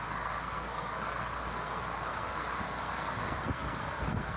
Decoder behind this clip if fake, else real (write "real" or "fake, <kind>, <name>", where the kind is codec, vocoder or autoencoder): fake, codec, SNAC